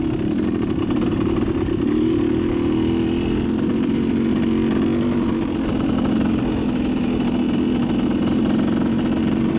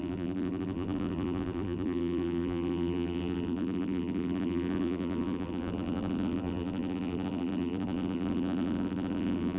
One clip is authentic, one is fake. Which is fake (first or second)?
second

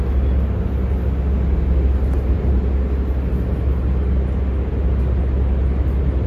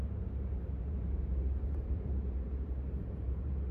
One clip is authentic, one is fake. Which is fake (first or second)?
second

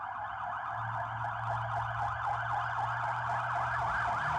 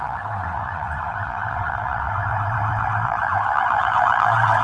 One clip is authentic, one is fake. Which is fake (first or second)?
second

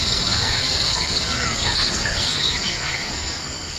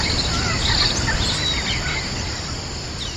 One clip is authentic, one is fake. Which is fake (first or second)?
first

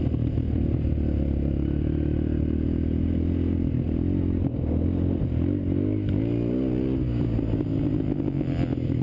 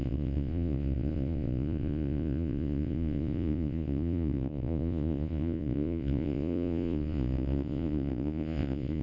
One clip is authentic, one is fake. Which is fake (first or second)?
second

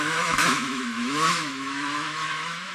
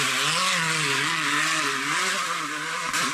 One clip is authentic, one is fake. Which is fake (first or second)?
first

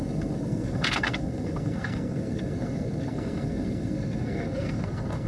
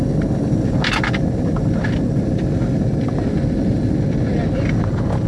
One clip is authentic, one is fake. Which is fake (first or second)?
first